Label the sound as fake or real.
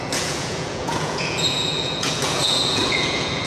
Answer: fake